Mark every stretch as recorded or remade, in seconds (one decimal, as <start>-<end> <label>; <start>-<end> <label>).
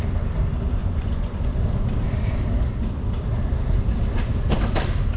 0.0-0.8 recorded; 0.8-1.5 remade; 1.5-5.2 recorded